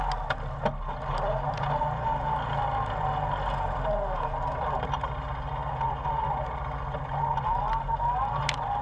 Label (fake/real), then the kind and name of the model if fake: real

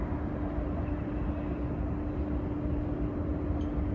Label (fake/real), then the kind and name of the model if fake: real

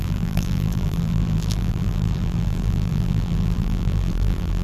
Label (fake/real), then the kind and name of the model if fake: fake, vocoder, BigVGAN v2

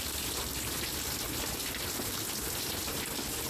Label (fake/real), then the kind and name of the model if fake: real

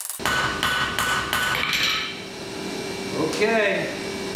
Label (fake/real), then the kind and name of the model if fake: real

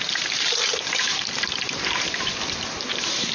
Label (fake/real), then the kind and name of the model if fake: fake, vocoder, BigVGAN v2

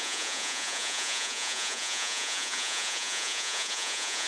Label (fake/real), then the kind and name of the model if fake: fake, vocoder, Vocos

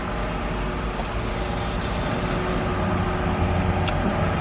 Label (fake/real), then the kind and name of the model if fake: real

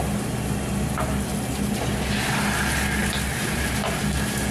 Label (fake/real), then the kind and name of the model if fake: real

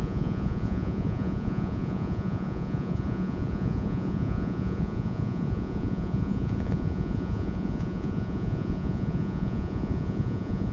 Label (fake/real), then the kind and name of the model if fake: fake, vocoder, Vocos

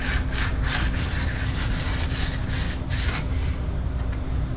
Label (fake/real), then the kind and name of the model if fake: real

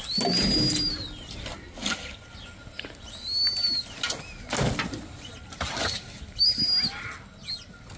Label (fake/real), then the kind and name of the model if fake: real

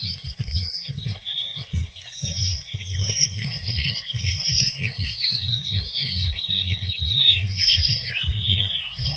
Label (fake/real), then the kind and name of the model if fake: fake, codec, SNAC